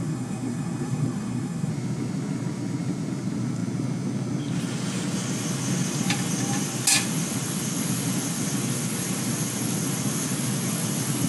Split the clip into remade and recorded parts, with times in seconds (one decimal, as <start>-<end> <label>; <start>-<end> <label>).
0.0-1.7 remade; 1.7-11.3 recorded